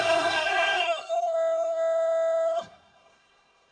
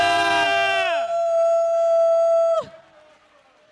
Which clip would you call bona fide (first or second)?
second